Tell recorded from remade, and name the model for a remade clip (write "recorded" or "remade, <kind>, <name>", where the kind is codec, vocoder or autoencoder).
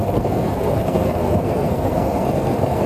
remade, codec, SNAC